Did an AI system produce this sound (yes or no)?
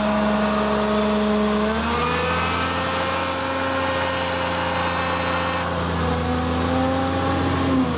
no